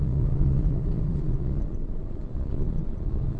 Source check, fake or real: fake